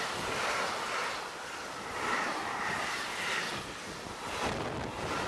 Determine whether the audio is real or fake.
real